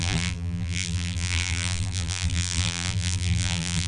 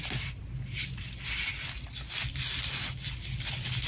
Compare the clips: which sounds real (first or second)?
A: second